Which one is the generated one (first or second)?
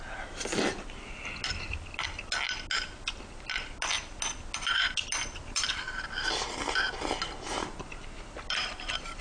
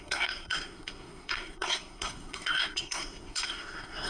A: second